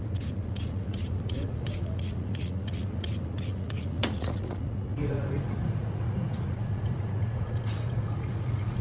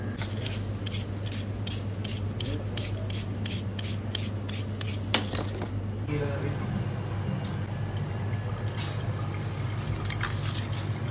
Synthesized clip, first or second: first